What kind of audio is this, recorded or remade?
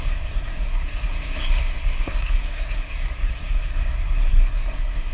remade